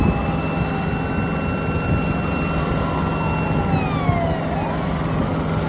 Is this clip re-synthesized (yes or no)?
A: no